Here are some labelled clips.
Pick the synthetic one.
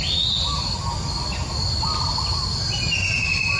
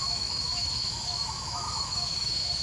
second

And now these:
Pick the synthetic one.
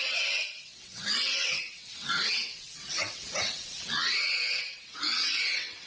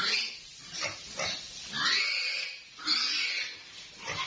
first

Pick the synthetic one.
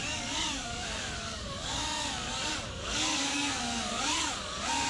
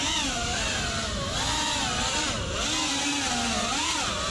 first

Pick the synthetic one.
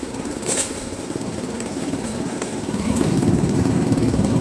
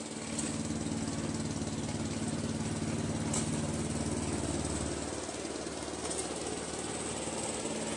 first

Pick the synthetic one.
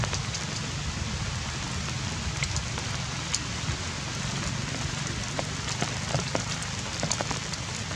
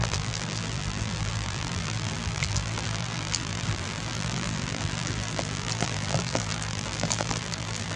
second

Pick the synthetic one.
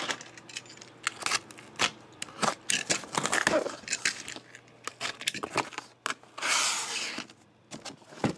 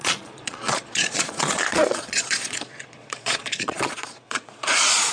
second